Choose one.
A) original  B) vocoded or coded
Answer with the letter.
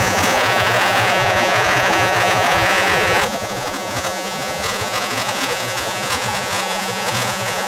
B